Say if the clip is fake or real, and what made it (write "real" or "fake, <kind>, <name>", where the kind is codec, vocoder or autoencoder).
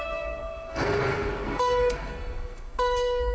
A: fake, codec, SNAC